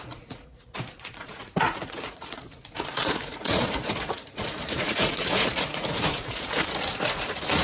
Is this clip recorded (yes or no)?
no